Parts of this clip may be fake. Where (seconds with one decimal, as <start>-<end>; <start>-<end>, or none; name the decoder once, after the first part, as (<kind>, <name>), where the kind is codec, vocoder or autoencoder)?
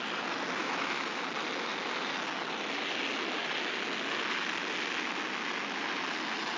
0.6-1.2 (autoencoder, DAC-VAE)